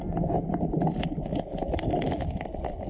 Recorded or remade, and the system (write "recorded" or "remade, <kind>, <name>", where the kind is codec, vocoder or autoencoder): recorded